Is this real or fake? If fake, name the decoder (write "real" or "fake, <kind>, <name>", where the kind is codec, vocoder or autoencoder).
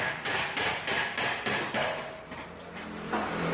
fake, vocoder, BigVGAN v2